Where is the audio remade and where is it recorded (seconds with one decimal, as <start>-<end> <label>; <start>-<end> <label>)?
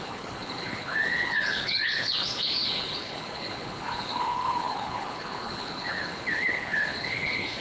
0.0-7.6 remade